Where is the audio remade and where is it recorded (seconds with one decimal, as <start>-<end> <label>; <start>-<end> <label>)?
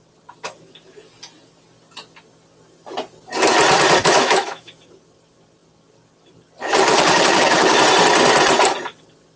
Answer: 0.0-4.0 recorded; 4.0-4.7 remade; 4.7-9.4 recorded